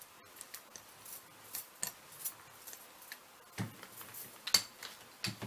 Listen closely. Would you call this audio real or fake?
real